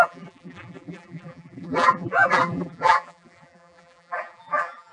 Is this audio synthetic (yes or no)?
yes